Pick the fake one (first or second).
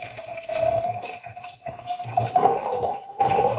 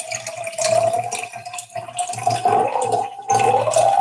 first